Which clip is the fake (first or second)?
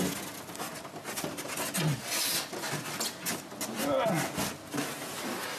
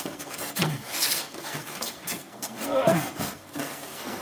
second